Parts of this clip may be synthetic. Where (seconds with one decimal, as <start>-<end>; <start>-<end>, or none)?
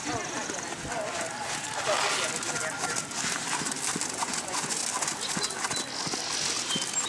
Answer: 4.2-4.8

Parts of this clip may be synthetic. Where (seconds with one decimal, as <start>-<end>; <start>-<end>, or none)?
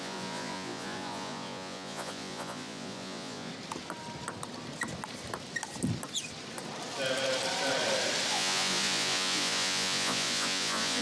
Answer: 0.0-3.5; 8.3-11.0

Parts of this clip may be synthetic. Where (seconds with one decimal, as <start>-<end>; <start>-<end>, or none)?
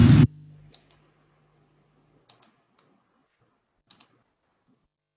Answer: none